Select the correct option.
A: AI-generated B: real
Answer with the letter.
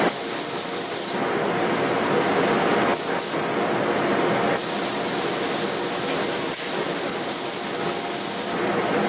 B